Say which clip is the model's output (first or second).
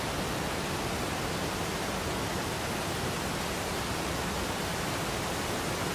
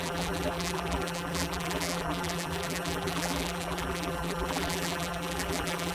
second